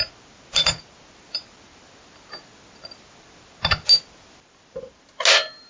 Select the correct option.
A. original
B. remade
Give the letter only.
A